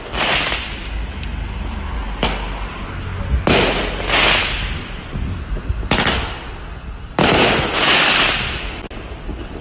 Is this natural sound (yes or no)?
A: yes